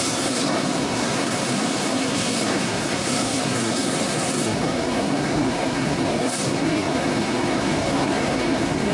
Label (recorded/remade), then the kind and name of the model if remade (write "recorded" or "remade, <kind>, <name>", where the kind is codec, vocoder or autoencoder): remade, codec, SNAC